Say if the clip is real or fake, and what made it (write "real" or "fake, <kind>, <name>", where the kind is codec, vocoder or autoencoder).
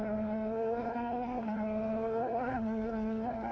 fake, codec, SNAC